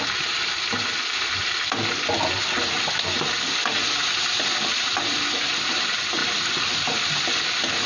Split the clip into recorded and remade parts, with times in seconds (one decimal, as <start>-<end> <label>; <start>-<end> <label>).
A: 0.0-1.4 remade; 1.4-5.2 recorded; 5.2-6.2 remade; 6.2-7.9 recorded